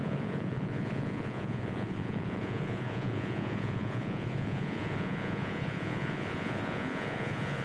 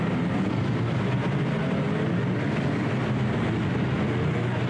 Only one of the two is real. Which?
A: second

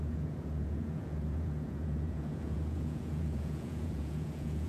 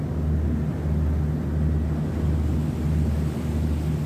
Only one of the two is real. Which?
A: second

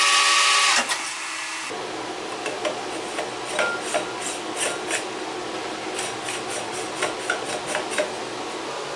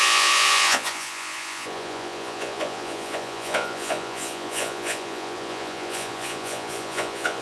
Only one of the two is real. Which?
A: first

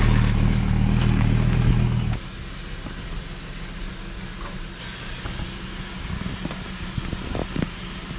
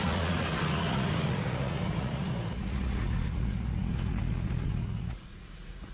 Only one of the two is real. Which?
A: first